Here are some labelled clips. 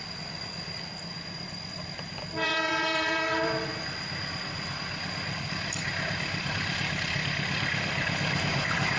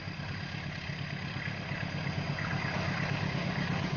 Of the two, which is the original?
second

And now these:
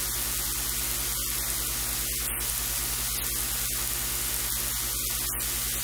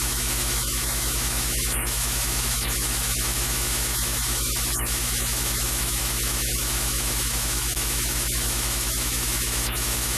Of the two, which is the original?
first